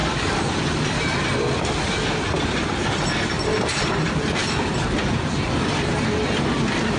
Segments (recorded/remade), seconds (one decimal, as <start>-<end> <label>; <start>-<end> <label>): 0.0-2.8 remade; 2.8-4.4 recorded; 4.4-5.9 remade; 5.9-7.0 recorded